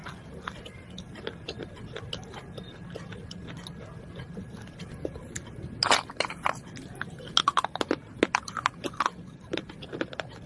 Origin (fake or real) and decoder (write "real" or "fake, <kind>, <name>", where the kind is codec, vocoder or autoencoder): real